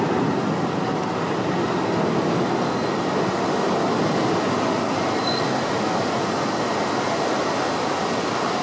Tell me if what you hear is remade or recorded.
recorded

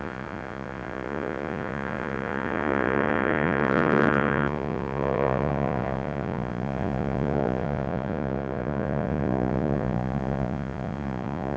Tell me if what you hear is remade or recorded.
remade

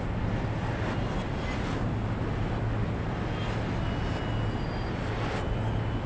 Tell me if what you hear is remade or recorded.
recorded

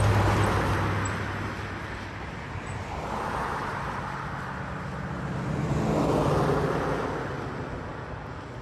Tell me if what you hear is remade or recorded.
recorded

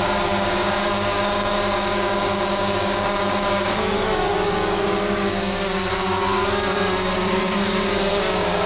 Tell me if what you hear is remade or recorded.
remade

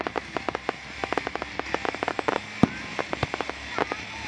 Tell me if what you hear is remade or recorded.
recorded